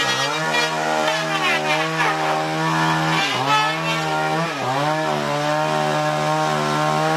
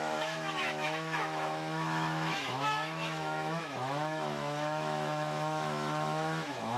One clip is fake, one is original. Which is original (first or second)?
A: first